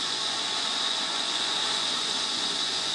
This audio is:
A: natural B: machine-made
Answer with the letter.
B